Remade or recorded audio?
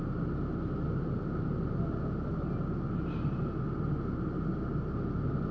recorded